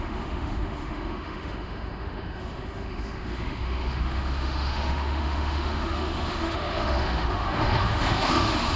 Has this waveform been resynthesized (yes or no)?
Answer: yes